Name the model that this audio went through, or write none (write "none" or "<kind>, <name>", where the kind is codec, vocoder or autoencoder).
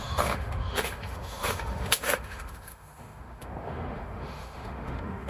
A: autoencoder, DAC-VAE